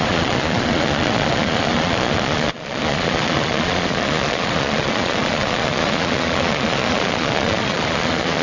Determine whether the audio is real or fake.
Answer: fake